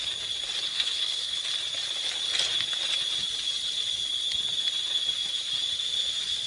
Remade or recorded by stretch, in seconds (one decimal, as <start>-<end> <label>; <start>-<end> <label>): 0.0-0.7 recorded; 0.7-1.3 remade; 1.3-6.5 recorded